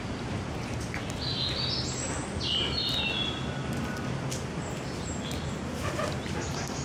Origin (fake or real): real